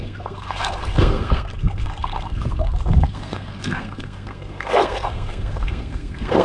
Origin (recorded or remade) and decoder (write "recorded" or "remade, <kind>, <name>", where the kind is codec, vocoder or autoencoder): remade, codec, SNAC